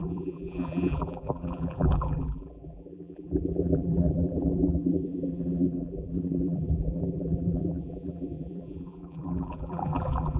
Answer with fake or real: fake